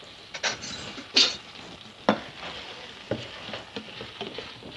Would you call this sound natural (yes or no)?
yes